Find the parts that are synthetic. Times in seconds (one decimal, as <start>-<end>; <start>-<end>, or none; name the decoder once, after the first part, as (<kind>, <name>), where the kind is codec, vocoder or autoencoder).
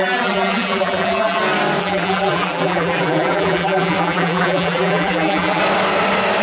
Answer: 0.0-1.4 (vocoder, BigVGAN v2); 1.8-5.6